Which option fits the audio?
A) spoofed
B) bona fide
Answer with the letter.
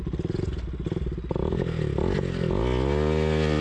B